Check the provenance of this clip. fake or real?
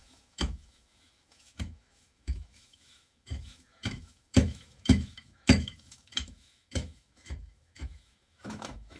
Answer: fake